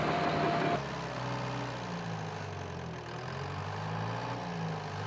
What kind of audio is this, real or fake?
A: real